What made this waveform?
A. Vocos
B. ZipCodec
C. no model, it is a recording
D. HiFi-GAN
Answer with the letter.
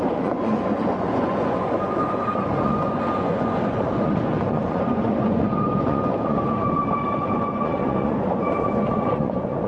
A